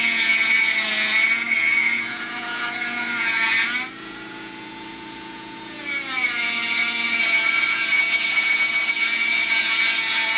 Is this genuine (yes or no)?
no